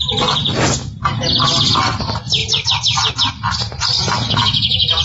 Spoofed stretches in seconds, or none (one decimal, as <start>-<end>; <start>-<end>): none